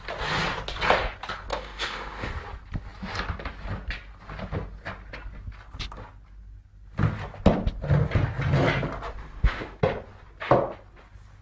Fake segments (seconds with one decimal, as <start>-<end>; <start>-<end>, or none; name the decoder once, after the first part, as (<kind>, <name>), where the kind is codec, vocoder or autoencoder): 1.5-2.3 (autoencoder, DAC-VAE); 9.2-9.8